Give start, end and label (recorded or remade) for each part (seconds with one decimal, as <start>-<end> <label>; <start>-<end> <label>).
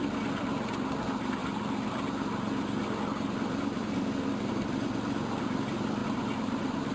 0.0-6.0 recorded; 6.0-6.9 remade